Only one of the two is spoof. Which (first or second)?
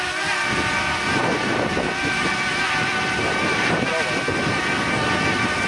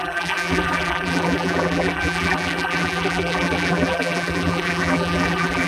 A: second